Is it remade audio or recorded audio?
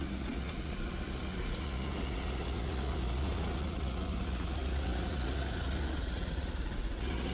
remade